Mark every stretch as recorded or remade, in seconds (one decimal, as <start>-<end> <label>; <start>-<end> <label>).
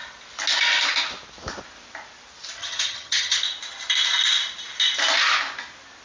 0.0-2.6 recorded; 2.6-3.4 remade; 3.4-6.0 recorded